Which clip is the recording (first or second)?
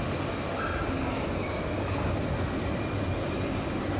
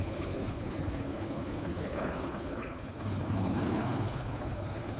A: first